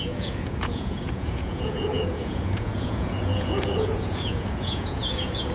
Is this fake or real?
fake